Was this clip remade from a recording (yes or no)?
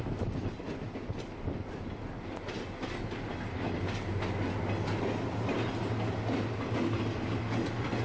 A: no